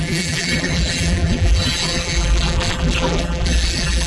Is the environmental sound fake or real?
fake